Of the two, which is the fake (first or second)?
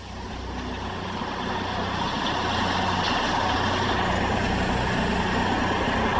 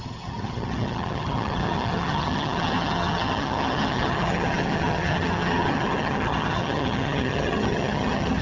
second